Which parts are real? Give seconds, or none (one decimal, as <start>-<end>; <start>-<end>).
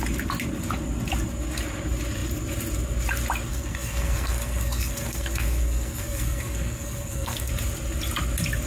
0.0-3.5; 7.5-8.7